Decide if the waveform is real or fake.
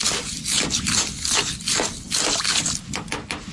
real